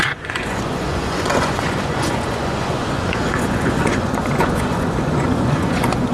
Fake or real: fake